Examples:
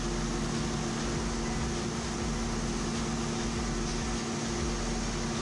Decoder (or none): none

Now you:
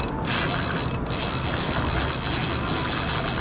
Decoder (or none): none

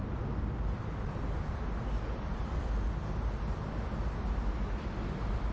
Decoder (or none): none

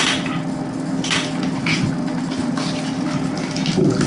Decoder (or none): none